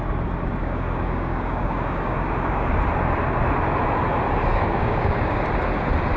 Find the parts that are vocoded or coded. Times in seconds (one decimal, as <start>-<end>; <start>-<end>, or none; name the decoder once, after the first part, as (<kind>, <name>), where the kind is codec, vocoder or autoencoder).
0.6-2.7 (codec, DAC); 4.5-5.4